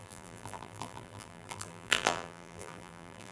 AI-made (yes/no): yes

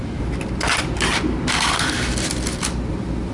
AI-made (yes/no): no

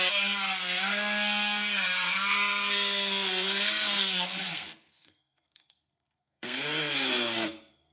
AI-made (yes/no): yes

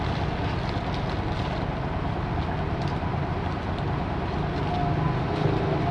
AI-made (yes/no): no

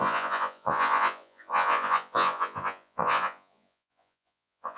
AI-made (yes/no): yes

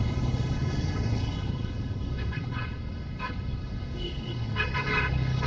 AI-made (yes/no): yes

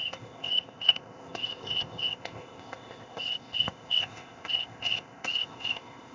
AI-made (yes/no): yes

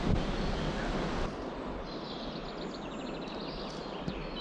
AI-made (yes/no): no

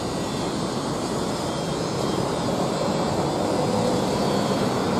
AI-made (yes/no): yes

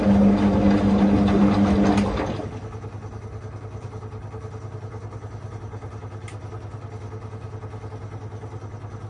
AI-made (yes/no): no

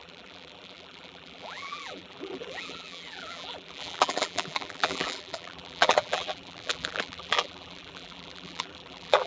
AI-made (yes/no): yes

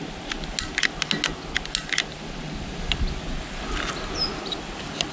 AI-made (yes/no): no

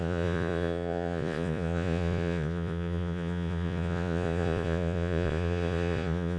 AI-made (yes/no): yes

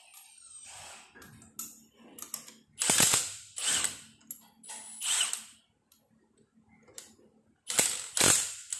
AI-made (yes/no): no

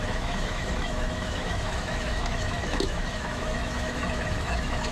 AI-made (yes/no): yes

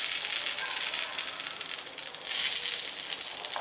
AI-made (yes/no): no